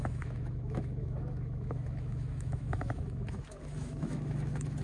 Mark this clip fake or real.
fake